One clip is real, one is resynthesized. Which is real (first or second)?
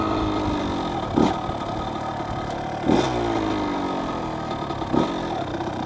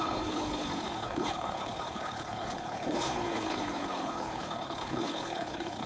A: first